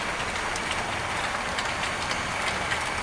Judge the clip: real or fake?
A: real